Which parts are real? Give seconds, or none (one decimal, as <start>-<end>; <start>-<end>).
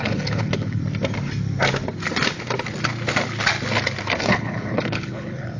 0.8-4.2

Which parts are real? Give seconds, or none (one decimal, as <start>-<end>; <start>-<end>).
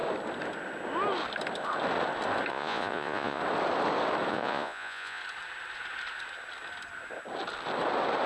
0.0-2.5; 3.4-4.3; 5.2-8.3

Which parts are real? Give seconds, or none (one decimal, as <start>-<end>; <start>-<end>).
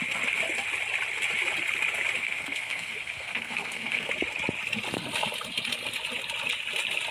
0.0-2.2; 4.1-7.1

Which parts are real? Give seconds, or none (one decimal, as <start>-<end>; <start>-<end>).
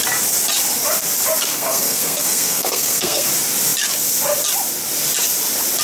0.0-1.5; 3.3-5.8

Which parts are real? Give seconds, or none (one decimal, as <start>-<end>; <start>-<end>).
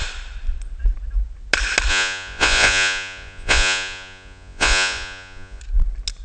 0.0-1.9; 5.6-6.2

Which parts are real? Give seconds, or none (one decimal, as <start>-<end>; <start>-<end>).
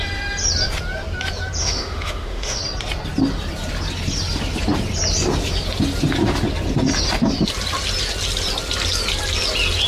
0.0-1.6; 2.6-9.9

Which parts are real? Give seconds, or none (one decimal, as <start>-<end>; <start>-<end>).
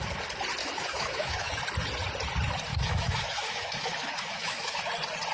0.0-0.6; 1.6-2.7; 4.8-5.3